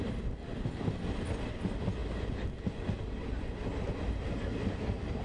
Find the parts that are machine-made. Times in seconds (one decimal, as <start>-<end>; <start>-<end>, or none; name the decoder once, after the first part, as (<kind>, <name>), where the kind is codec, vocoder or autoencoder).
none